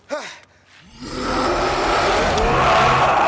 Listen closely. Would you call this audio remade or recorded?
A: recorded